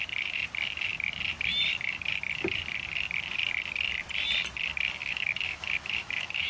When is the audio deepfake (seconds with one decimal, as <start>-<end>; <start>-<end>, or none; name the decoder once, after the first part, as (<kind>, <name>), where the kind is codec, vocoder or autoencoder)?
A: 5.0-6.5 (autoencoder, DAC-VAE)